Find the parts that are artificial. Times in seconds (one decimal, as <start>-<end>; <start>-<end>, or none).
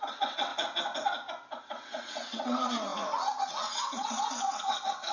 0.0-0.5; 1.6-5.1